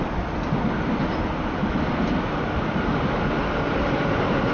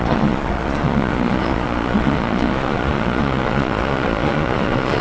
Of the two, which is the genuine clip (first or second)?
first